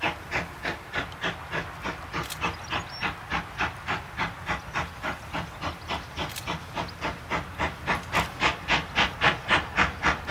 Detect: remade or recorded recorded